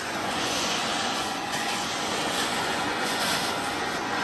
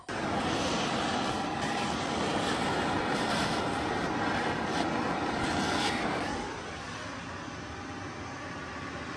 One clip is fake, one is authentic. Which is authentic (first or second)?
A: second